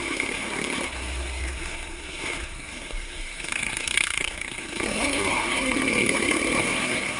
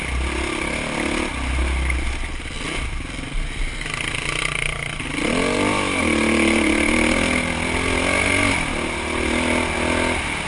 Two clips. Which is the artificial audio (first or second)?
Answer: first